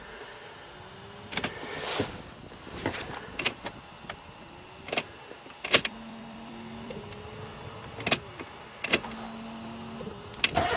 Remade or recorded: remade